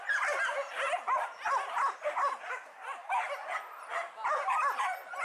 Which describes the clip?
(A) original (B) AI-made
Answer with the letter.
A